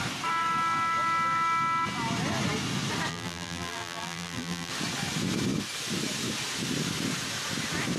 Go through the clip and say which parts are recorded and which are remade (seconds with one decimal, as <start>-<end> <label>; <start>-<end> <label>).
0.0-3.1 recorded; 3.1-4.7 remade; 4.7-8.0 recorded